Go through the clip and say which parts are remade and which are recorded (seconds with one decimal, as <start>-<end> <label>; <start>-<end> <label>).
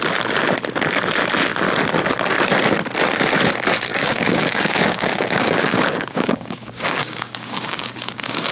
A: 0.0-3.9 recorded; 3.9-8.5 remade